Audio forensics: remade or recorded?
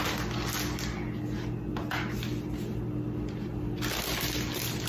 recorded